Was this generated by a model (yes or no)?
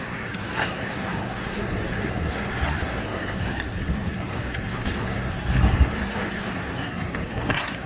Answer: yes